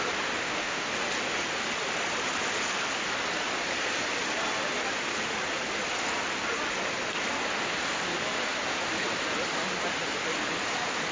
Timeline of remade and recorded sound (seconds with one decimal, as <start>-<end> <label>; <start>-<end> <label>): 0.0-0.4 recorded; 0.4-0.9 remade; 0.9-11.1 recorded